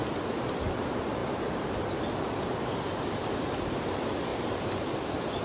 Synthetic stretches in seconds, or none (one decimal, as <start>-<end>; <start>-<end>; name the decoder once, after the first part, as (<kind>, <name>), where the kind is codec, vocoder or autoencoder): 1.2-2.0 (vocoder, BigVGAN v2); 4.3-4.8